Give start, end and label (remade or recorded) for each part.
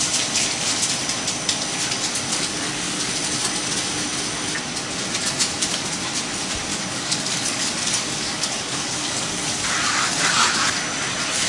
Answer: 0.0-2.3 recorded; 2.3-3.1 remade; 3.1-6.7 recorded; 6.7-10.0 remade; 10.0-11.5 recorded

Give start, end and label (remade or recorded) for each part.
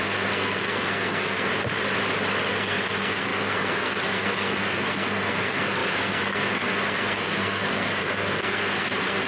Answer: 0.0-1.5 remade; 1.5-2.5 recorded; 2.5-9.3 remade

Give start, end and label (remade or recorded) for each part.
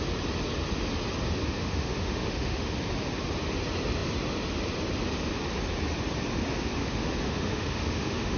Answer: 0.0-1.6 recorded; 1.6-2.8 remade; 2.8-6.8 recorded; 6.8-8.4 remade